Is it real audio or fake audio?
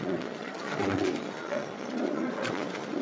fake